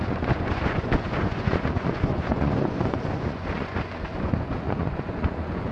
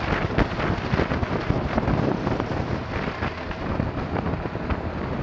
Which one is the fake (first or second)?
first